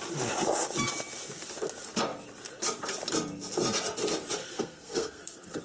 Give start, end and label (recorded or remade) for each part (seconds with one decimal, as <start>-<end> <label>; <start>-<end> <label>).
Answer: 0.0-4.4 recorded; 4.4-5.6 remade